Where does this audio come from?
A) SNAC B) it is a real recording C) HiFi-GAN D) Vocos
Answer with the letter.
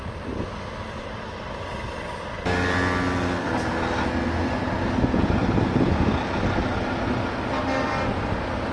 B